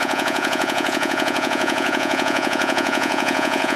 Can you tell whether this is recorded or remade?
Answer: remade